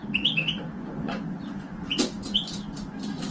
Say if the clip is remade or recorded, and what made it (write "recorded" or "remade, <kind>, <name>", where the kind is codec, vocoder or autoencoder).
remade, vocoder, Vocos